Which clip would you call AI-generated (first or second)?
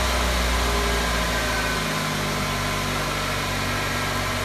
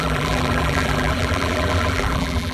second